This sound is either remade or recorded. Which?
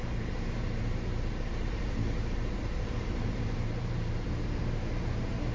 remade